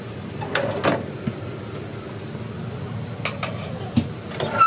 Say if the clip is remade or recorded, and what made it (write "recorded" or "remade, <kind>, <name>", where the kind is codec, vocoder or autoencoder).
recorded